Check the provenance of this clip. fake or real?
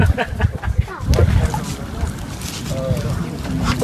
real